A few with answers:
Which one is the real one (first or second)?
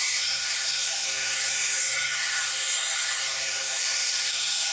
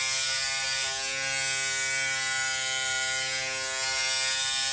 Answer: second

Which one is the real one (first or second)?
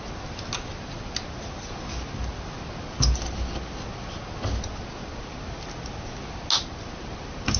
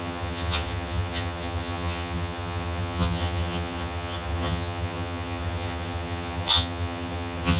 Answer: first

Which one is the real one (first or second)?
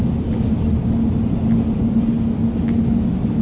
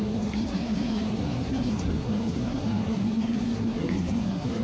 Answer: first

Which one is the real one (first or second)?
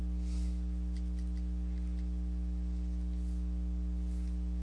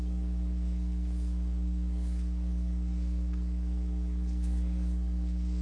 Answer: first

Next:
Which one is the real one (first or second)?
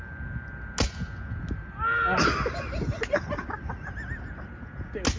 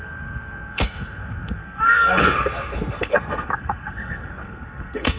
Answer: first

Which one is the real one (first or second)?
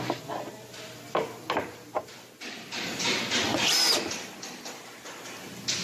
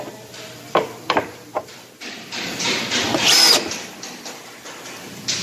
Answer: first